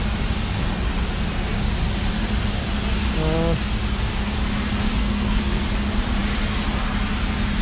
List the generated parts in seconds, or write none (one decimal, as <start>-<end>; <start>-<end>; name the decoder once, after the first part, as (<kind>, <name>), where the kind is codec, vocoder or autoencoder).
5.0-5.6 (codec, SNAC)